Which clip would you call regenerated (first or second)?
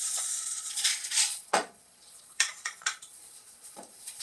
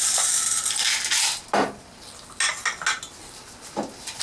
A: first